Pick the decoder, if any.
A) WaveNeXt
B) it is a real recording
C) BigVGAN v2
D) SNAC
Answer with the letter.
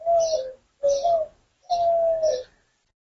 B